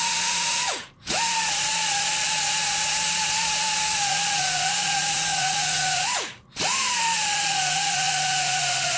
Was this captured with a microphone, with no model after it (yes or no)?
no